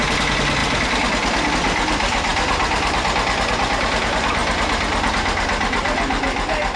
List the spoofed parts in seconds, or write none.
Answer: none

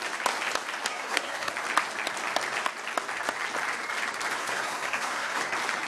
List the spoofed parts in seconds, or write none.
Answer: 0.9-1.5 (codec, SNAC); 4.4-5.4

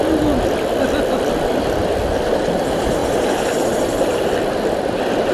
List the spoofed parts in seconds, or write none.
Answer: none

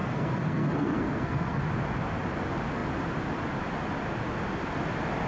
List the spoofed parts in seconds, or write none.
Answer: 0.0-1.6 (codec, SNAC)

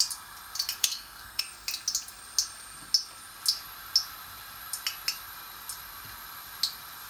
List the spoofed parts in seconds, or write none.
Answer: 0.8-1.4 (codec, SNAC)

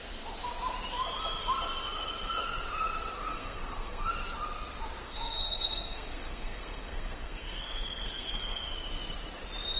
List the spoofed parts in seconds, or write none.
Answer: 3.3-4.1 (codec, SNAC); 5.0-8.7